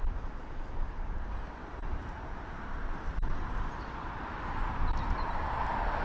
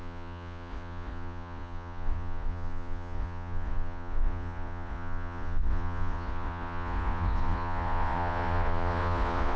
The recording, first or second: first